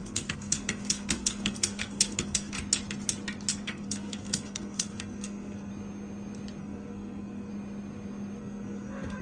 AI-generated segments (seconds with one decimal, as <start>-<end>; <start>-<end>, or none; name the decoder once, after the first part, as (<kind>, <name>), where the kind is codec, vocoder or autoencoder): 0.0-2.6 (codec, SNAC); 3.5-5.7; 6.6-7.5; 8.4-9.2